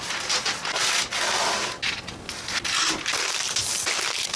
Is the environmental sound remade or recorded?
recorded